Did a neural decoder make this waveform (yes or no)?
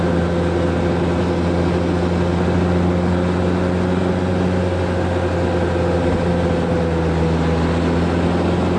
no